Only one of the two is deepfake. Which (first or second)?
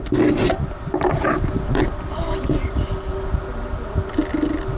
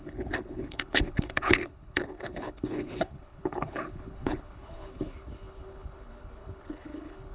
second